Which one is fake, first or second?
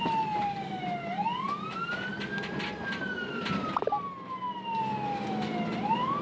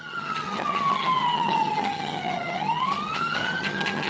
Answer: second